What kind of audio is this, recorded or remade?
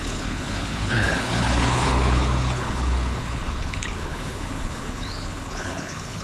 remade